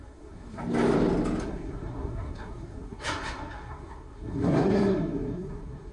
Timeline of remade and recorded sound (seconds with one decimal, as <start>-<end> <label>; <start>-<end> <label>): 0.0-0.6 remade; 0.6-1.4 recorded; 1.4-5.9 remade